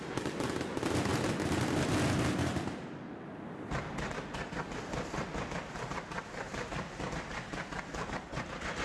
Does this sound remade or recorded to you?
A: recorded